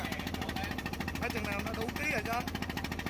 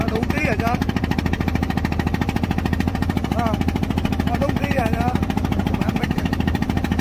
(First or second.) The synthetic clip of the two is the second